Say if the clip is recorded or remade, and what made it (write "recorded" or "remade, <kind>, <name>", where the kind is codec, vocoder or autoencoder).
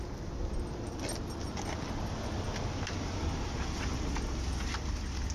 recorded